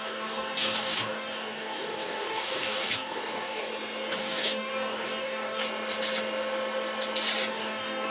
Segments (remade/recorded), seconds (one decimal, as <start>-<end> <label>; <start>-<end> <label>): 0.0-3.7 remade; 3.7-4.2 recorded; 4.2-5.6 remade; 5.6-7.5 recorded; 7.5-8.1 remade